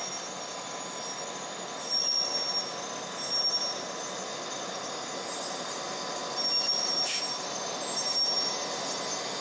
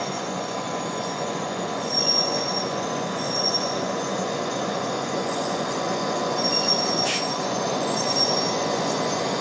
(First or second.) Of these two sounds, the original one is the first